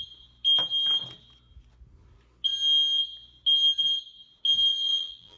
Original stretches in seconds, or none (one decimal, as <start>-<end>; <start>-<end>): 0.0-4.7

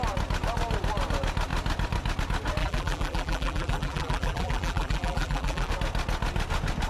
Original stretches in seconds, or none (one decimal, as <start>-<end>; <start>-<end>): 0.0-2.6; 5.7-6.9